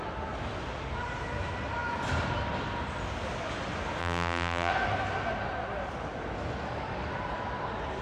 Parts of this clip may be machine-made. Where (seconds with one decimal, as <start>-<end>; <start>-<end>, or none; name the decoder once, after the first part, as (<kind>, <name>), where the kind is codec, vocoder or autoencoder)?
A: 4.0-4.7 (vocoder, BigVGAN v2)